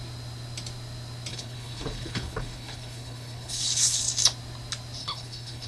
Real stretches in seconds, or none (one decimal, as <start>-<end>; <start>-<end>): 0.0-1.3; 4.0-5.0